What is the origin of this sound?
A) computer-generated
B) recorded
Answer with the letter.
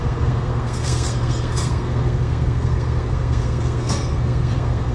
A